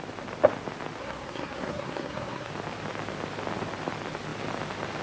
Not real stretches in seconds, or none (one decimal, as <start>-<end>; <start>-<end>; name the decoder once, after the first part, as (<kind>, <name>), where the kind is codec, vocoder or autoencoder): 1.0-2.5 (codec, SNAC)